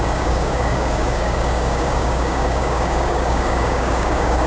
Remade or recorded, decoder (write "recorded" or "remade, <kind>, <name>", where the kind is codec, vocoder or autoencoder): remade, codec, DAC